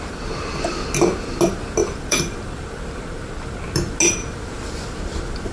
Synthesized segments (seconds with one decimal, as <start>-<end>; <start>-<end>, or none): 1.8-2.9